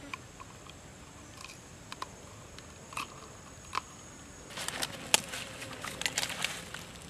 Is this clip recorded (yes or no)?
yes